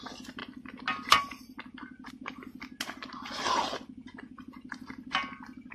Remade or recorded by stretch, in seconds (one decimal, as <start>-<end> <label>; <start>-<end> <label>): 0.0-5.7 recorded